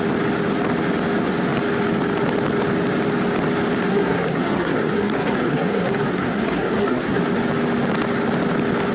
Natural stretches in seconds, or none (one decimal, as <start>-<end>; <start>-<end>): 0.0-3.9; 7.2-8.9